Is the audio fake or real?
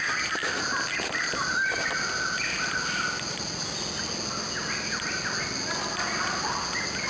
real